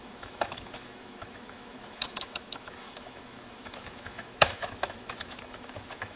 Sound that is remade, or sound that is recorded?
remade